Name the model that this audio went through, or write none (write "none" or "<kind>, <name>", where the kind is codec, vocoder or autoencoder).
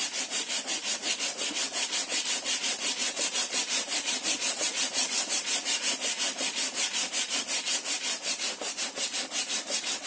vocoder, BigVGAN v2